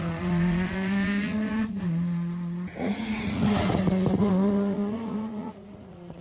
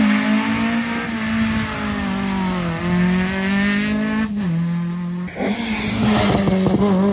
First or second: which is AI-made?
first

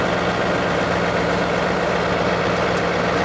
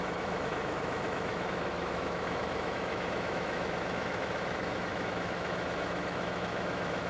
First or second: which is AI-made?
second